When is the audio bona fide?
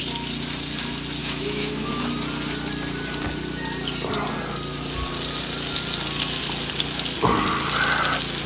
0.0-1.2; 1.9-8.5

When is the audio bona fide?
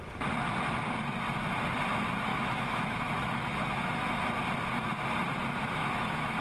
0.0-2.3; 4.3-5.8